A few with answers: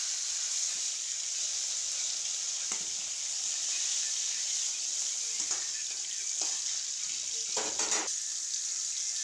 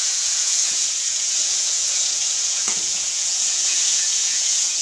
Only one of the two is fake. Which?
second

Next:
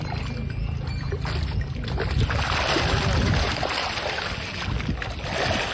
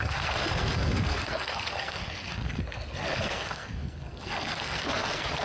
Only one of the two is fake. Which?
second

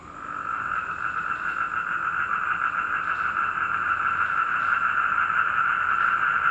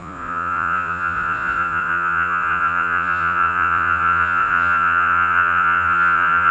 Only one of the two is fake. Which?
second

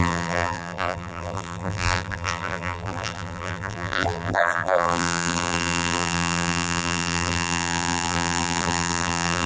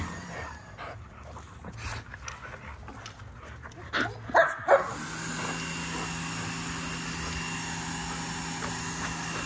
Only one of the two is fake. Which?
first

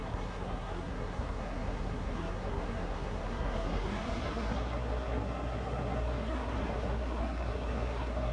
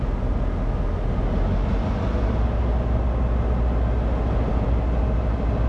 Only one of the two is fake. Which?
first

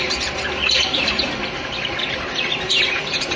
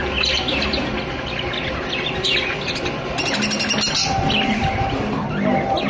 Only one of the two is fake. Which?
first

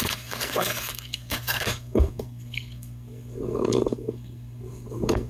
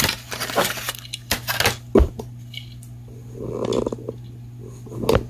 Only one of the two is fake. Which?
first